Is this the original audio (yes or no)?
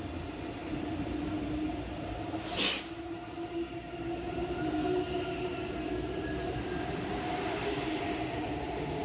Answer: yes